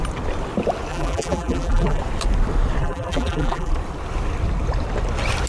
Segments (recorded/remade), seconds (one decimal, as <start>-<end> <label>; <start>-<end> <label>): 0.0-0.9 recorded; 0.9-2.0 remade; 2.0-2.8 recorded; 2.8-3.7 remade; 3.7-5.5 recorded